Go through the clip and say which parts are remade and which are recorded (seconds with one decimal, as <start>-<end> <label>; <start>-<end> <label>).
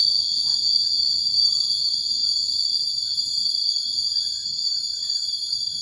0.0-5.8 recorded